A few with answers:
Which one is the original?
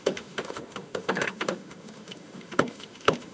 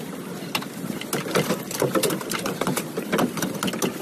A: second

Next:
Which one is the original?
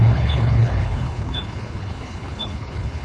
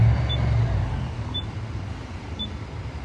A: second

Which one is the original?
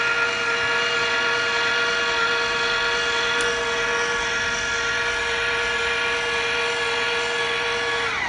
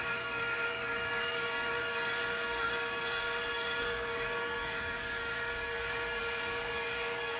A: first